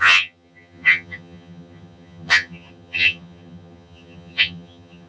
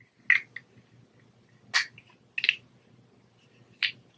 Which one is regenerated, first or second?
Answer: first